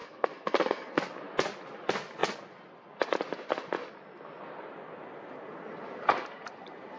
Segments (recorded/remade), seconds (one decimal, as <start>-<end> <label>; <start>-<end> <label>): 0.0-1.0 remade; 1.0-7.0 recorded